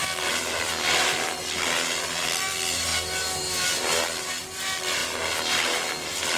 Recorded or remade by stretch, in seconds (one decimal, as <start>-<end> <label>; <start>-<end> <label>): 0.0-6.4 recorded